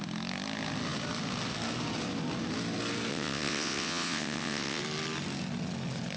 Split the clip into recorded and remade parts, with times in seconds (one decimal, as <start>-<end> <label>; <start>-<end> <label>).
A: 0.0-3.1 recorded; 3.1-4.8 remade; 4.8-6.2 recorded